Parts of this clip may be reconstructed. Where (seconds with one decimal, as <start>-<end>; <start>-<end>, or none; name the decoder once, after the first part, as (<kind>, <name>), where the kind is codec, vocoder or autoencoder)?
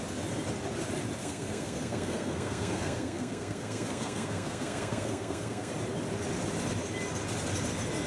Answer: 1.2-5.7 (codec, SNAC)